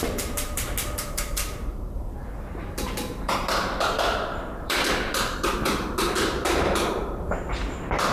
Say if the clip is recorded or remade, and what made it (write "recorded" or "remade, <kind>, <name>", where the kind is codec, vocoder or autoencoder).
remade, vocoder, BigVGAN v2